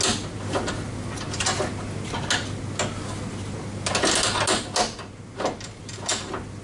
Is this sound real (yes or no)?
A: yes